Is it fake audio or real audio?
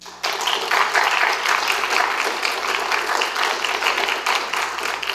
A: real